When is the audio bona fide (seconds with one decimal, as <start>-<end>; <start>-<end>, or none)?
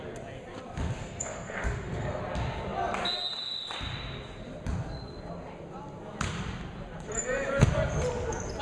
0.0-1.0; 2.2-8.6